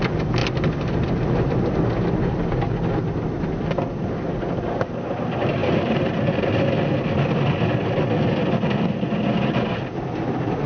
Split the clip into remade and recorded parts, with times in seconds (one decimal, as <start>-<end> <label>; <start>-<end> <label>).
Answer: 0.0-5.6 recorded; 5.6-6.3 remade; 6.3-10.7 recorded